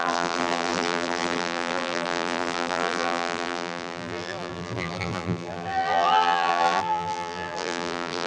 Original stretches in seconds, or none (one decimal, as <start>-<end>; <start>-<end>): none